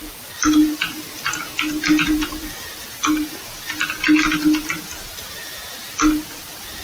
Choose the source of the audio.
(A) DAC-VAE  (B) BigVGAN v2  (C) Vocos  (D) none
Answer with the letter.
D